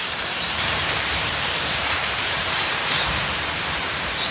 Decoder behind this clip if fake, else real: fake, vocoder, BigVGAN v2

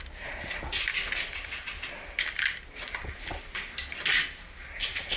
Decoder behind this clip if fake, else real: real